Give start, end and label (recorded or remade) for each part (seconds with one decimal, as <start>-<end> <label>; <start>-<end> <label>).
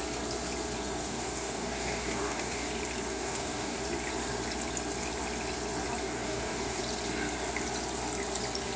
0.0-1.0 recorded; 1.0-2.7 remade; 2.7-3.1 recorded; 3.1-3.8 remade; 3.8-6.0 recorded; 6.0-6.8 remade; 6.8-8.8 recorded